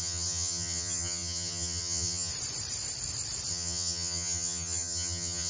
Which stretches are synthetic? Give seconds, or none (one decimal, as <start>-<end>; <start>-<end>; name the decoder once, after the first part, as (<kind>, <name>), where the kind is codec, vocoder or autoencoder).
0.0-2.3 (vocoder, HiFi-GAN); 3.5-5.5